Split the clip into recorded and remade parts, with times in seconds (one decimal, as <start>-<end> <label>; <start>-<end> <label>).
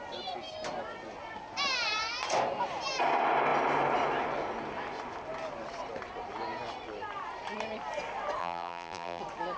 0.0-8.4 recorded; 8.4-9.2 remade; 9.2-9.6 recorded